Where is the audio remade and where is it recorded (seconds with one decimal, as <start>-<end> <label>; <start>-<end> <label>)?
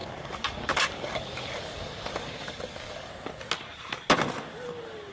0.0-3.1 remade; 3.1-5.1 recorded